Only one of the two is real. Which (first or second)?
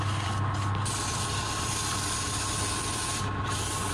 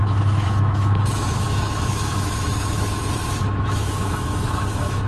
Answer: first